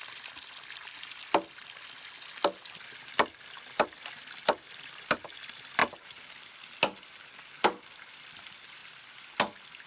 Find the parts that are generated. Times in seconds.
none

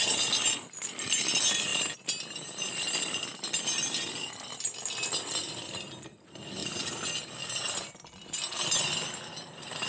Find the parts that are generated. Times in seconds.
none